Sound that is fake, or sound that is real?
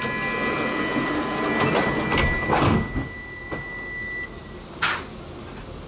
real